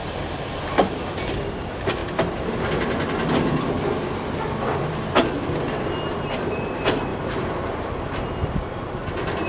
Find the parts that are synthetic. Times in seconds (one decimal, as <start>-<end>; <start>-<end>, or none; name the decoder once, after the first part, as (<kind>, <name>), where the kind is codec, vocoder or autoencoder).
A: 0.0-1.0 (vocoder, BigVGAN v2); 2.0-2.7; 7.1-7.8